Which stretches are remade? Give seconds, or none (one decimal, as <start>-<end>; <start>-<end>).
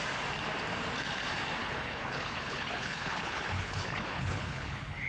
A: 1.6-5.1